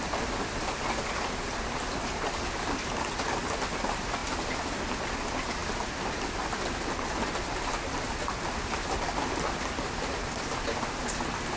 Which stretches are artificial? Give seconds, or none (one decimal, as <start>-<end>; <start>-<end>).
none